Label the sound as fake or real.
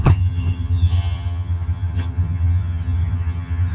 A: fake